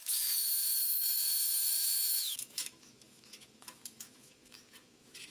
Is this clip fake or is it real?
fake